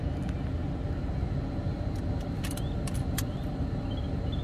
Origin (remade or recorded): recorded